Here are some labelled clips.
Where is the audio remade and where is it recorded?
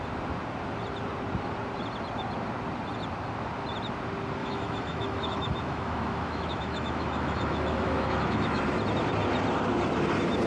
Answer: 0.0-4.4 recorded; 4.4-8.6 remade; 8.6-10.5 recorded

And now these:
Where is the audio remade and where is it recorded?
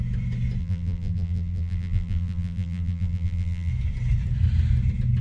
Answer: 0.0-0.6 recorded; 0.6-3.7 remade; 3.7-5.2 recorded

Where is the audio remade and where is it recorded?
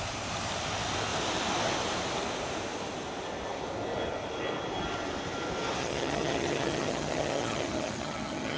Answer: 0.0-5.8 recorded; 5.8-8.6 remade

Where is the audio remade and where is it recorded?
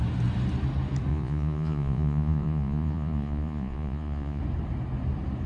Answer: 0.0-1.1 recorded; 1.1-4.4 remade; 4.4-5.5 recorded